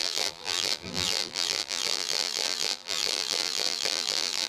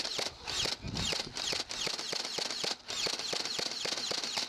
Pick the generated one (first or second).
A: first